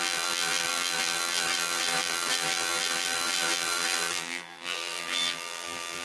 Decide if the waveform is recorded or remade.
remade